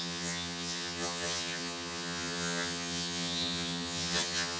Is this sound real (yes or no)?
no